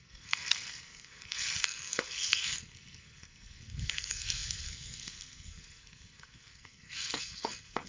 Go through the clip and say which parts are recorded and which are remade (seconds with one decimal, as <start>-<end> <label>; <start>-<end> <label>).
0.0-7.9 remade